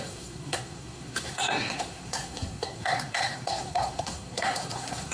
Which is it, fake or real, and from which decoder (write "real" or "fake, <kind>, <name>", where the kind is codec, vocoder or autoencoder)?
fake, codec, SNAC